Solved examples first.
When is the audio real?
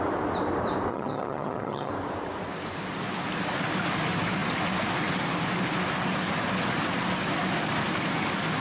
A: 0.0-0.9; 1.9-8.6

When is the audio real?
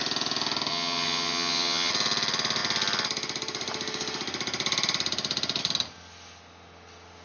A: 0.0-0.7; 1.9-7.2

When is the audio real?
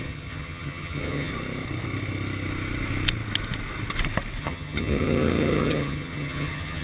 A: 1.3-4.4